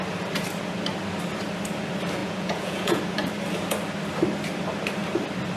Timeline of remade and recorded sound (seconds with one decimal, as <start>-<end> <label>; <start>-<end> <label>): 0.0-2.2 recorded; 2.2-3.0 remade; 3.0-5.6 recorded